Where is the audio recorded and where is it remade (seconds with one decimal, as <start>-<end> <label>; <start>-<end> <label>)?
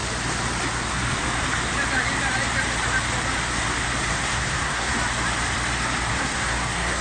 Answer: 0.0-4.1 recorded; 4.1-4.9 remade; 4.9-6.1 recorded; 6.1-7.0 remade